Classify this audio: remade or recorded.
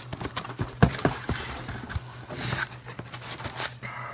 recorded